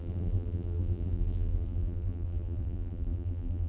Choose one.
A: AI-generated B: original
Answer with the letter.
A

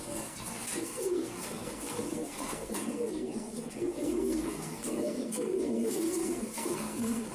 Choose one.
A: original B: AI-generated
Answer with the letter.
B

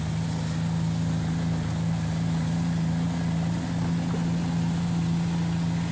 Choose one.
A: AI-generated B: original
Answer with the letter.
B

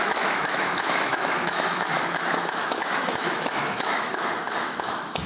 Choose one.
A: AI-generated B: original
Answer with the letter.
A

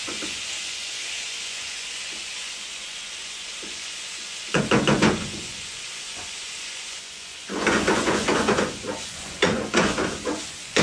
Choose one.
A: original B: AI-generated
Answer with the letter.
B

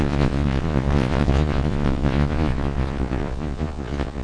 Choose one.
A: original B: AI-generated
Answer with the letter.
B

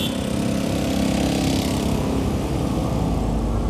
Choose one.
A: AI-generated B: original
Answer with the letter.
B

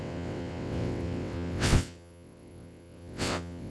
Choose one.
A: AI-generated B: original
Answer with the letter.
A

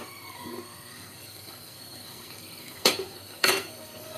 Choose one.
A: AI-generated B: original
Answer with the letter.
A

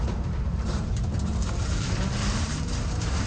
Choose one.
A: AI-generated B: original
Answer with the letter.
A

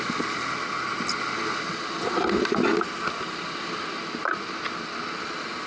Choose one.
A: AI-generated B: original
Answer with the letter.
B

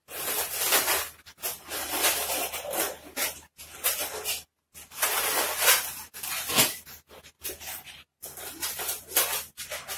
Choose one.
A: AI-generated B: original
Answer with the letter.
B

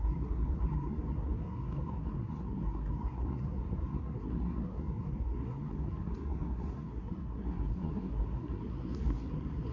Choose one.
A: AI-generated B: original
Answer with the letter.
A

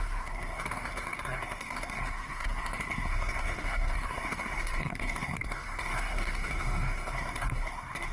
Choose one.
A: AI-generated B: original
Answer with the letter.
A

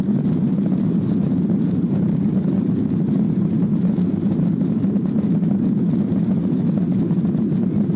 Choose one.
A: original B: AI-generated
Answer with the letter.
B